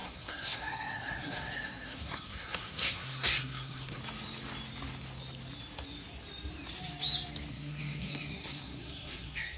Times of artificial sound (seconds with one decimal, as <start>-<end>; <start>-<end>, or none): 0.0-4.0; 7.5-9.6